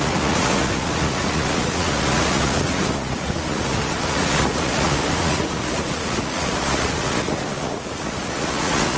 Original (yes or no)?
no